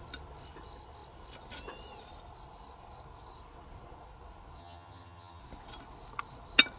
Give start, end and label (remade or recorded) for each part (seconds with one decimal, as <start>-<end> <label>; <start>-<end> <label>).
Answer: 0.0-4.6 recorded; 4.6-5.4 remade; 5.4-6.8 recorded